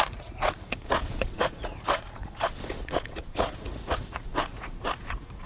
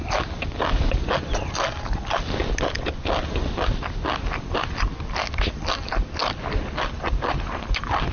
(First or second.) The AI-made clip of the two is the first